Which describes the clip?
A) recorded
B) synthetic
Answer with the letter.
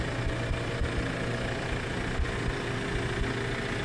A